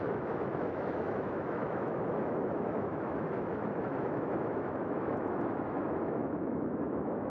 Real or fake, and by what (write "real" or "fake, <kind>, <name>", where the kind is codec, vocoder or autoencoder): fake, autoencoder, DAC-VAE